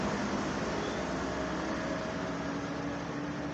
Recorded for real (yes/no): yes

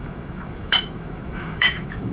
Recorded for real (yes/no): no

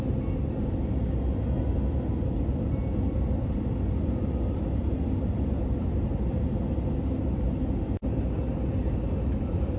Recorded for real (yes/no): yes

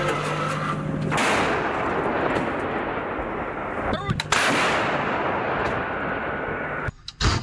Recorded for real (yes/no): yes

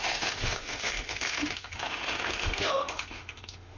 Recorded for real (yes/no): no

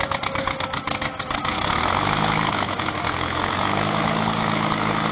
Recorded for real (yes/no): no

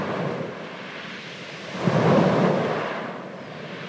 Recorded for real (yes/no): yes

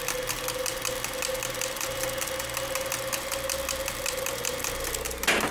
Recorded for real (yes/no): yes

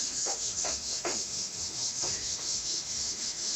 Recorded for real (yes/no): no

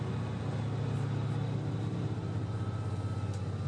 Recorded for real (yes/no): yes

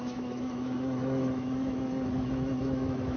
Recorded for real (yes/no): no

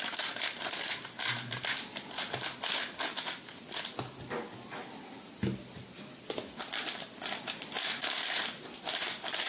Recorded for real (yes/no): yes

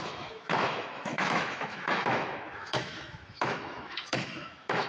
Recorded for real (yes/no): no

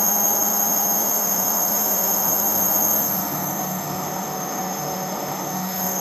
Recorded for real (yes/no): no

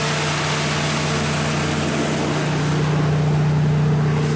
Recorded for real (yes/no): yes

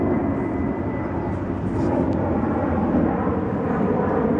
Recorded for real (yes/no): yes